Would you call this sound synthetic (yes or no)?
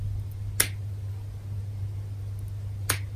no